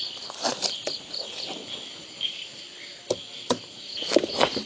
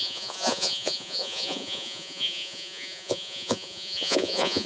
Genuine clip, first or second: first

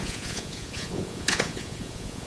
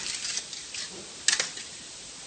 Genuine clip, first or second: second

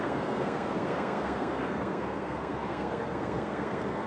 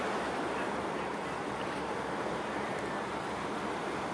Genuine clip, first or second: second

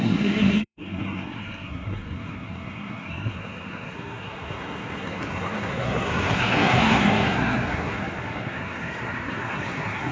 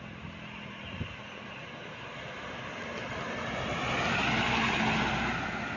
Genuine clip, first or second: second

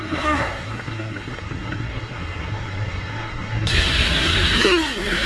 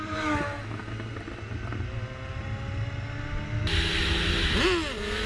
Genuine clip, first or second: second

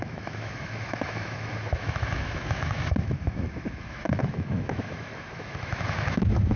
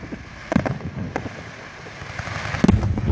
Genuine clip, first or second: second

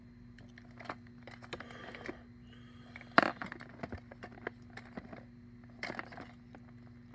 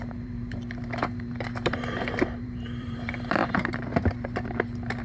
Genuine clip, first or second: first